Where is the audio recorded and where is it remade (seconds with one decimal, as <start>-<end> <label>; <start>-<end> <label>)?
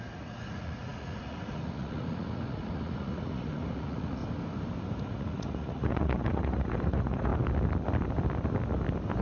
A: 0.0-4.2 remade; 4.2-5.0 recorded; 5.0-7.3 remade; 7.3-9.2 recorded